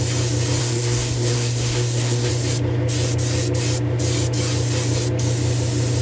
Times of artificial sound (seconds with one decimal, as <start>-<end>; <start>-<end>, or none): 0.6-2.3